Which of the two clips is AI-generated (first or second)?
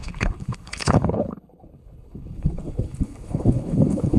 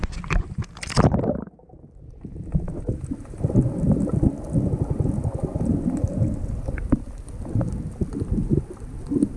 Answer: first